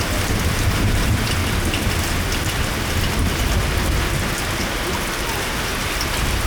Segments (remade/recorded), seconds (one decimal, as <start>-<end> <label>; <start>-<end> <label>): 0.0-1.4 remade; 1.4-5.3 recorded; 5.3-5.7 remade; 5.7-6.5 recorded